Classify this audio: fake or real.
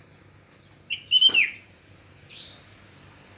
real